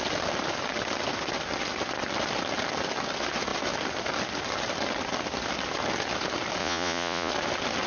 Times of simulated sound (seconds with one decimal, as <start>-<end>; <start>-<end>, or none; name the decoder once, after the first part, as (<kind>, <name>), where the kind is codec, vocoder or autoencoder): 6.6-7.3 (vocoder, Vocos)